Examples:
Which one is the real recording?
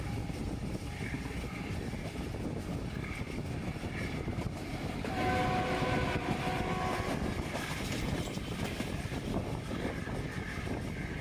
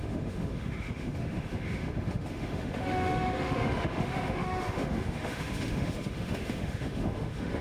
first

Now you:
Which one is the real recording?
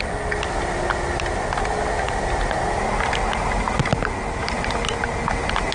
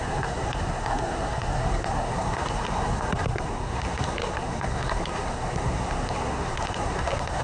first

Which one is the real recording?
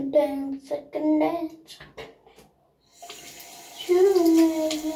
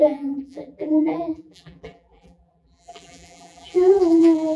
first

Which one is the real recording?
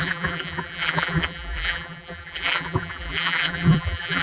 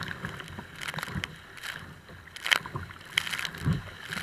second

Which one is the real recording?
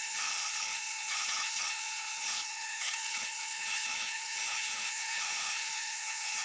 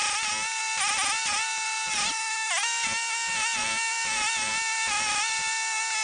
second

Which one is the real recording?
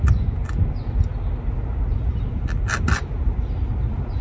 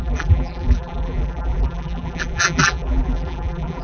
first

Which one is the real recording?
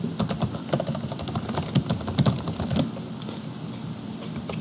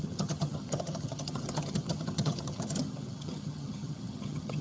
first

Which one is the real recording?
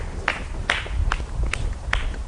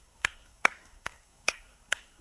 first